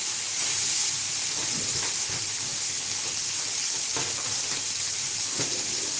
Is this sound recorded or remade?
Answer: recorded